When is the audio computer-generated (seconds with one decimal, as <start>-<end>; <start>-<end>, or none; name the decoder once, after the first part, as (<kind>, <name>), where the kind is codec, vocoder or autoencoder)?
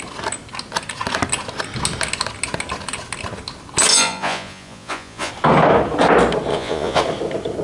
3.9-5.3 (vocoder, Vocos); 6.5-7.0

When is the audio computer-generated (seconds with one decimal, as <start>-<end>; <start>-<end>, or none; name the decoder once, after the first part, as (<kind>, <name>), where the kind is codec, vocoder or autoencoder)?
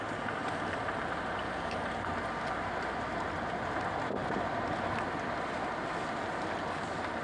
none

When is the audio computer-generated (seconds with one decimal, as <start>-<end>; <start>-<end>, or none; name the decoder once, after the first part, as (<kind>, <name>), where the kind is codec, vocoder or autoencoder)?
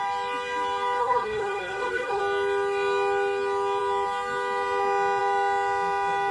1.0-2.2 (codec, SNAC)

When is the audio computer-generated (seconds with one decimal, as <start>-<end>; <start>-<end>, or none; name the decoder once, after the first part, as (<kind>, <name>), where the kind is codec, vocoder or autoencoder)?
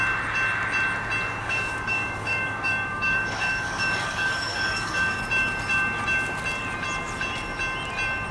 1.4-5.2 (codec, DAC)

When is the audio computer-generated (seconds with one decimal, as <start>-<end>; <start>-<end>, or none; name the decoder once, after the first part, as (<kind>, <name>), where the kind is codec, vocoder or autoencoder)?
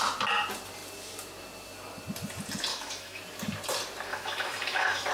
2.7-3.2 (autoencoder, DAC-VAE); 4.1-5.1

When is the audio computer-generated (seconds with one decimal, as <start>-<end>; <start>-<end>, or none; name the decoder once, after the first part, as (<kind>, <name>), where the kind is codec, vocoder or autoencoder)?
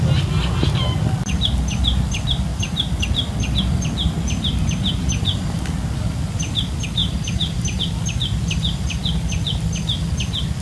2.5-3.0 (vocoder, BigVGAN v2); 7.0-7.8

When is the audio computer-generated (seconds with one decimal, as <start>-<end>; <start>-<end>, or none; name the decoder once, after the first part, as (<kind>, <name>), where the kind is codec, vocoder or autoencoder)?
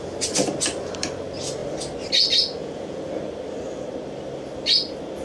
2.6-3.1 (vocoder, Vocos)